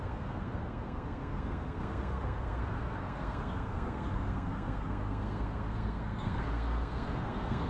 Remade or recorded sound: remade